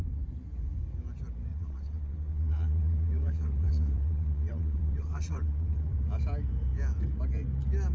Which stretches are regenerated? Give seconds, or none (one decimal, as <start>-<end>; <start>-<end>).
1.5-5.9